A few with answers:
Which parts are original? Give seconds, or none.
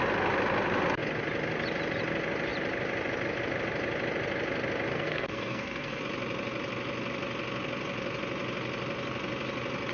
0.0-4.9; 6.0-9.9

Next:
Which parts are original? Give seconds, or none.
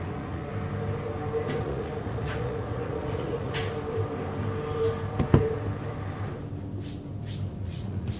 0.5-1.6; 3.6-7.6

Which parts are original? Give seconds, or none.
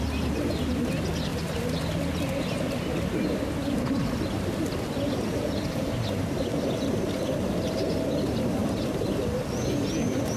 0.0-1.3; 1.8-3.6; 5.8-8.6; 9.5-10.4